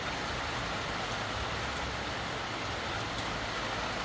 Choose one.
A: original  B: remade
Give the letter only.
A